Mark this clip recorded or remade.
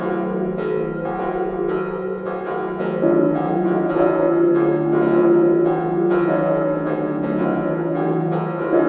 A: remade